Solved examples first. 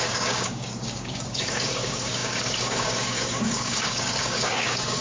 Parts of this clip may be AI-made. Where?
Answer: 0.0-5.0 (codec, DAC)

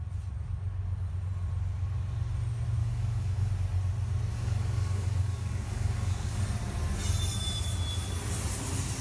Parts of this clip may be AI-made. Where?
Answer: 2.8-3.5 (codec, DAC); 4.3-6.4

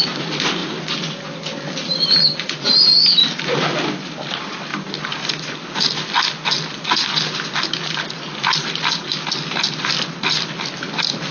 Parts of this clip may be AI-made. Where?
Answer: none

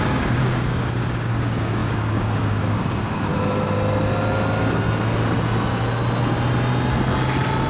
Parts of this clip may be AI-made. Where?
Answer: 0.0-3.3 (codec, DAC)

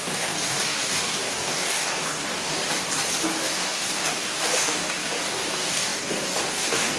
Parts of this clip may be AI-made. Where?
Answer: 0.0-2.6 (codec, DAC); 3.4-7.0

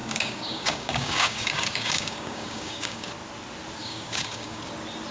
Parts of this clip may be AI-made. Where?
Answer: 0.0-3.1 (codec, DAC); 3.8-4.6

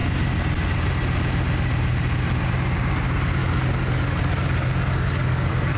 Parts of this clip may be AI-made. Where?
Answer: 3.4-5.8 (codec, DAC)

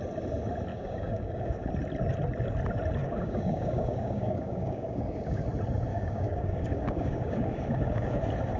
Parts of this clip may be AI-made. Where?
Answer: 0.7-1.7 (codec, DAC); 3.0-5.4; 5.9-8.2